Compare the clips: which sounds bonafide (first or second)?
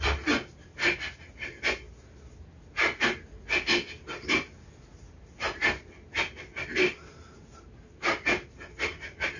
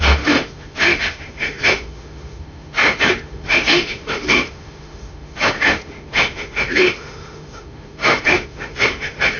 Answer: first